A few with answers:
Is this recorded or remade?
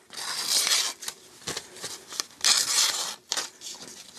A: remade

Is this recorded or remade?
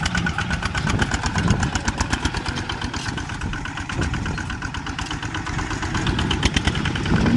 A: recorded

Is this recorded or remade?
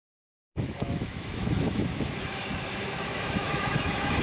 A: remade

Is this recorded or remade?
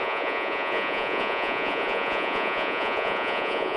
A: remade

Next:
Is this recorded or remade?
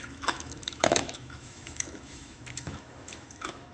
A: remade